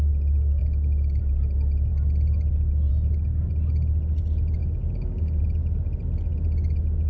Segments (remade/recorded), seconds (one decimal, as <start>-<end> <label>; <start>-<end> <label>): 0.0-0.6 recorded; 0.6-1.2 remade; 1.2-4.6 recorded; 4.6-5.4 remade; 5.4-7.1 recorded